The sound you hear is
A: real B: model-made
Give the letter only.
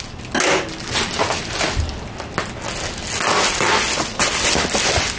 A